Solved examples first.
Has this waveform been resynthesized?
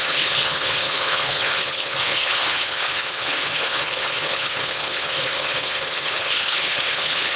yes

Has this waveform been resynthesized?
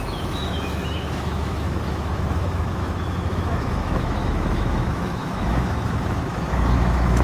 yes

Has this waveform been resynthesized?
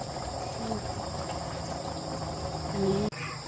no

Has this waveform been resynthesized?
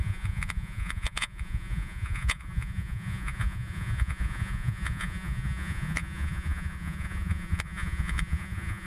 yes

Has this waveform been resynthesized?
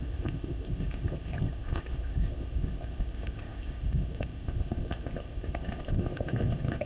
yes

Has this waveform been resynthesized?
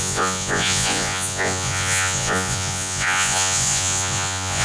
yes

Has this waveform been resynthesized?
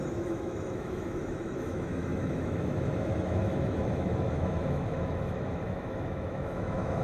yes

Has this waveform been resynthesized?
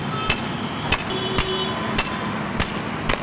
no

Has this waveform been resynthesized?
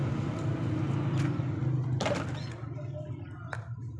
no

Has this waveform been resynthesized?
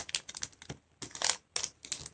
no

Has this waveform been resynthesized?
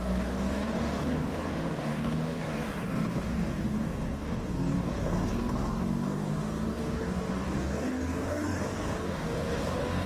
yes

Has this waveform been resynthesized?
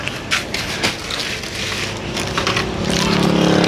no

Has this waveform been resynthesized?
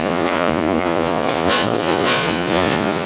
yes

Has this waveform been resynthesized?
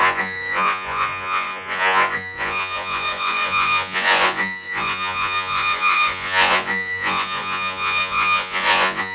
yes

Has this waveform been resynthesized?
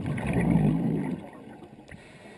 no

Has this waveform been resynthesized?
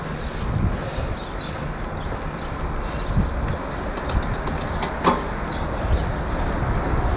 no